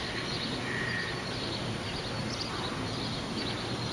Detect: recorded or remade recorded